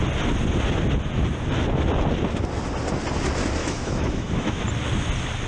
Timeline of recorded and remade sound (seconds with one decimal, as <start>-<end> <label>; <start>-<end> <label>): 0.0-3.6 recorded; 3.6-4.6 remade; 4.6-5.5 recorded

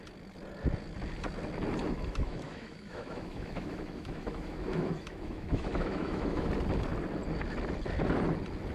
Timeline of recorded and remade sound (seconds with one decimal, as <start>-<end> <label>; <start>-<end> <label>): 0.0-1.8 recorded; 1.8-6.5 remade; 6.5-8.7 recorded

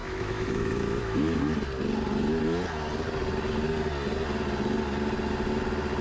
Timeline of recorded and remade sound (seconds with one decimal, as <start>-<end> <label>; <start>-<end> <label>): 0.0-1.4 remade; 1.4-6.0 recorded

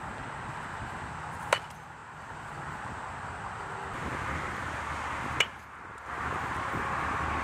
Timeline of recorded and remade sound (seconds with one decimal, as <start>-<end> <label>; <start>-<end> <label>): 0.0-7.4 recorded

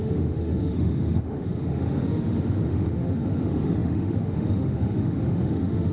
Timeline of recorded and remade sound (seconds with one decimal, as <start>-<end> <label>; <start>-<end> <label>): 0.0-5.9 remade

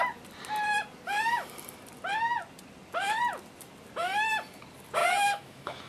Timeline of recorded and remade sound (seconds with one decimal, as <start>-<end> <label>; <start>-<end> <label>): 0.0-5.0 recorded; 5.0-5.9 remade